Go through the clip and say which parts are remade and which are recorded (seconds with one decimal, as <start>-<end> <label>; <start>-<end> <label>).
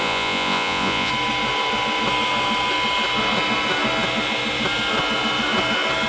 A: 0.0-1.1 remade; 1.1-6.1 recorded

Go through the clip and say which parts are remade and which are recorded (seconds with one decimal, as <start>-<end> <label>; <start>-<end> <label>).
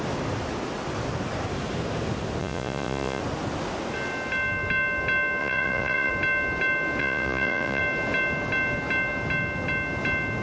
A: 0.0-2.4 recorded; 2.4-3.2 remade; 3.2-5.4 recorded; 5.4-6.1 remade; 6.1-7.0 recorded; 7.0-7.8 remade; 7.8-10.4 recorded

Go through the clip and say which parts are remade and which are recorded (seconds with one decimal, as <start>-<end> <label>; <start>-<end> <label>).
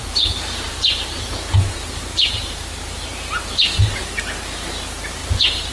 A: 0.0-3.4 remade; 3.4-5.2 recorded; 5.2-5.7 remade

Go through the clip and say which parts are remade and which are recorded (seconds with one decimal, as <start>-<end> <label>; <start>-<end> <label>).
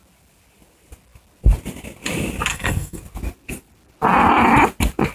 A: 0.0-2.5 recorded; 2.5-3.0 remade; 3.0-5.1 recorded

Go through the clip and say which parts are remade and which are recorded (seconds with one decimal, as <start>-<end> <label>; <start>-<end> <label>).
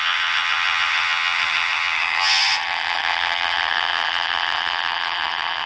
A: 0.0-5.7 remade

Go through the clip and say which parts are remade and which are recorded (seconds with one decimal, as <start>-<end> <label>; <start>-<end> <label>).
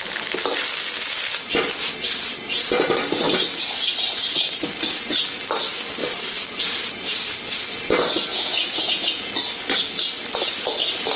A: 0.0-8.3 recorded; 8.3-9.3 remade; 9.3-11.2 recorded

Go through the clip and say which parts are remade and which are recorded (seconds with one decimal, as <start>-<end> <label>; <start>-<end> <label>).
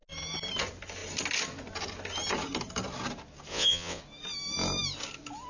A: 0.0-3.5 recorded; 3.5-4.0 remade; 4.0-5.5 recorded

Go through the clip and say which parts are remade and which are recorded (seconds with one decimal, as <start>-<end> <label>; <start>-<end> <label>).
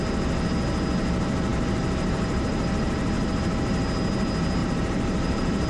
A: 0.0-1.5 recorded; 1.5-3.4 remade; 3.4-4.6 recorded; 4.6-5.7 remade